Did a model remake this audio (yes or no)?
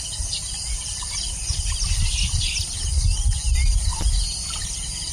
no